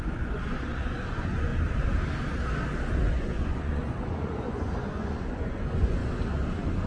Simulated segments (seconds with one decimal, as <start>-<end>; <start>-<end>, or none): 0.0-1.5; 3.1-6.0